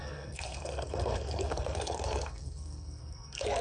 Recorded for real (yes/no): no